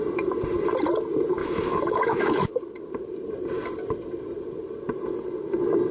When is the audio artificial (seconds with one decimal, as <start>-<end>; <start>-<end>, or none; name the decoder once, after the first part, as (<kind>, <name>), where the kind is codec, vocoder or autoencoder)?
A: 1.4-2.4 (autoencoder, DAC-VAE)